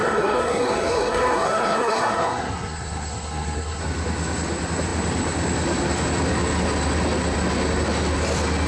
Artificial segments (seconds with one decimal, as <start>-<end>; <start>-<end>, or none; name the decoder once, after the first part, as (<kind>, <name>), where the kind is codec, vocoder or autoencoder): 0.0-3.8 (codec, SNAC)